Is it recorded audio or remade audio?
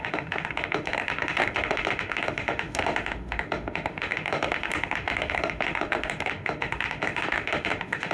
remade